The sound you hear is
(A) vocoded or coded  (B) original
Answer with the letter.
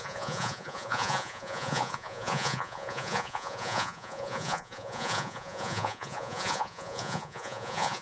A